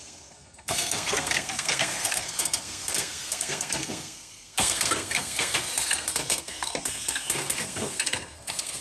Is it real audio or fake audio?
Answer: fake